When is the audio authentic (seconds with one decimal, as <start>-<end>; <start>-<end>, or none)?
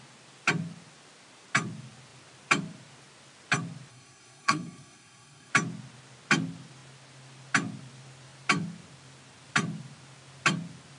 0.0-3.9; 5.5-11.0